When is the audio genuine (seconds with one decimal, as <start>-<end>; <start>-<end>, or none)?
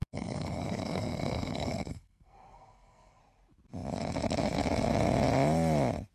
3.2-6.1